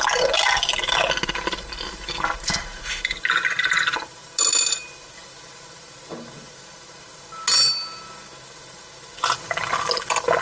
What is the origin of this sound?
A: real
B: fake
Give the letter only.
A